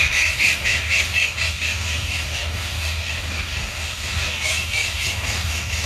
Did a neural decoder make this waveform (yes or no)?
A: yes